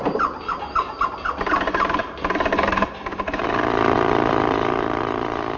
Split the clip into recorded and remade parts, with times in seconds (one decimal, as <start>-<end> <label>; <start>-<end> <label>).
0.0-2.0 recorded; 2.0-3.4 remade; 3.4-5.6 recorded